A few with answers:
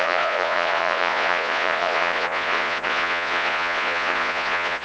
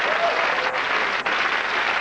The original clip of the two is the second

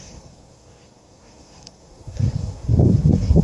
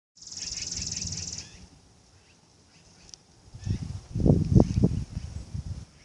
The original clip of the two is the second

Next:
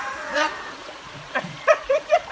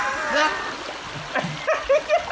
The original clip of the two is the second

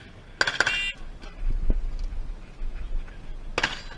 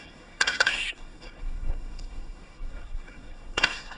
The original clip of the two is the first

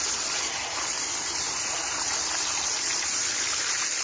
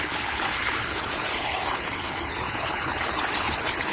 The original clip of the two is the first